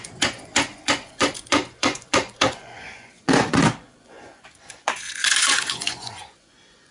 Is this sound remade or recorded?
remade